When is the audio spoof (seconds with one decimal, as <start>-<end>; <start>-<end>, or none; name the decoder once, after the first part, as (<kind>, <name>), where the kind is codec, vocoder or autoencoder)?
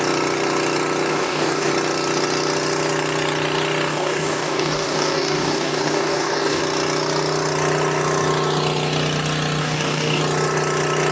1.1-1.7 (codec, DAC); 3.9-6.6; 9.6-10.2